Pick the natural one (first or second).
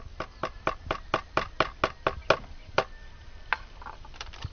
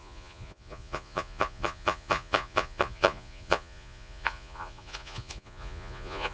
first